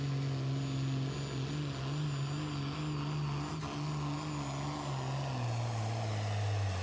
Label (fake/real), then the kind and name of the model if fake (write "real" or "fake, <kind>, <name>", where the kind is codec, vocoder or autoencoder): real